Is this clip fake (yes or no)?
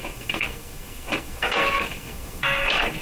yes